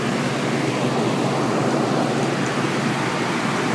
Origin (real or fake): real